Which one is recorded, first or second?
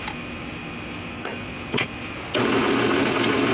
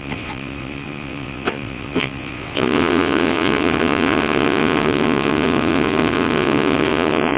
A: first